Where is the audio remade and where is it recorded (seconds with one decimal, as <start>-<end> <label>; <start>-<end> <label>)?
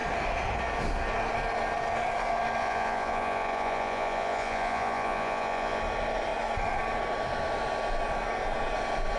0.0-2.6 recorded; 2.6-5.8 remade; 5.8-9.2 recorded